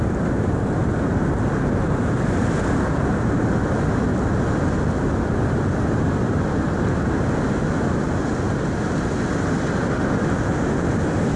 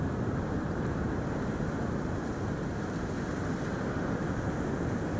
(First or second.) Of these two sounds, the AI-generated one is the second